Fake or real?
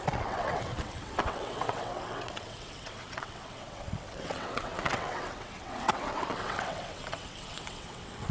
fake